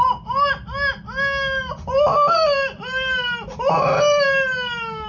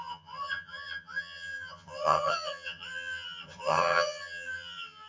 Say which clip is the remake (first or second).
second